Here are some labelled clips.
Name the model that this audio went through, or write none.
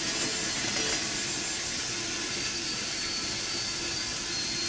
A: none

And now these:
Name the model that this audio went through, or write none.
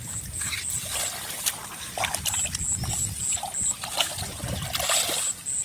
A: none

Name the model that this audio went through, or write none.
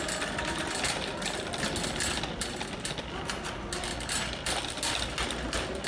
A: none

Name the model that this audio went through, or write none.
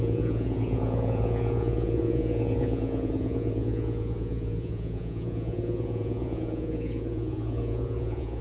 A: vocoder, Vocos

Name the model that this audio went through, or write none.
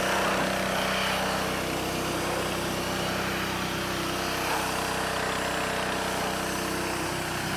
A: none